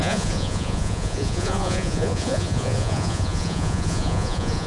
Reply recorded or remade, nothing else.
remade